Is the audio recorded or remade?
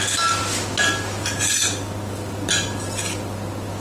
recorded